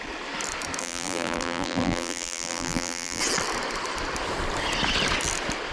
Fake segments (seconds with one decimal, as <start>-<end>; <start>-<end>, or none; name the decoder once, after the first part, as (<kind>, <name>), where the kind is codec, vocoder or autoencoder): 0.8-3.2 (vocoder, BigVGAN v2)